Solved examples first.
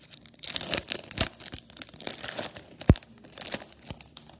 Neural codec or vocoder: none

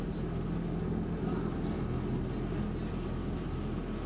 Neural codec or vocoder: none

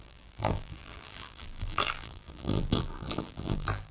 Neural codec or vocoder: vocoder, BigVGAN v2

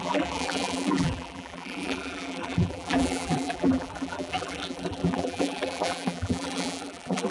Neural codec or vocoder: vocoder, BigVGAN v2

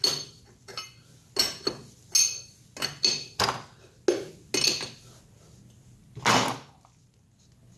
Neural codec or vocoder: none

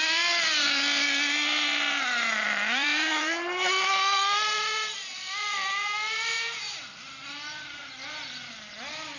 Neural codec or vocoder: vocoder, BigVGAN v2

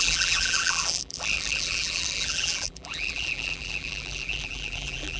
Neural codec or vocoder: vocoder, BigVGAN v2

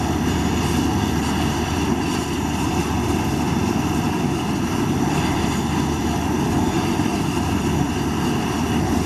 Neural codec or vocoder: vocoder, BigVGAN v2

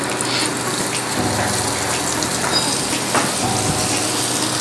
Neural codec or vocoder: none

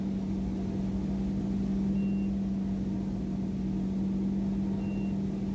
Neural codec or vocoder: none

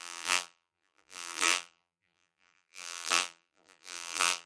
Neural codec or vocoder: vocoder, BigVGAN v2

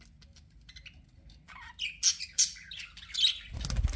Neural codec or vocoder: none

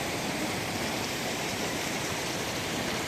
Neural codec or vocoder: vocoder, BigVGAN v2